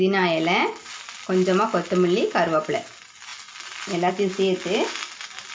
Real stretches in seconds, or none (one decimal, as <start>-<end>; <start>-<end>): 0.0-5.5